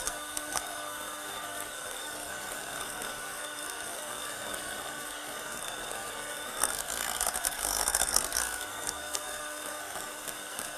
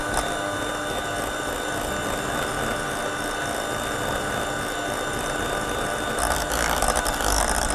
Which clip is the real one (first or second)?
second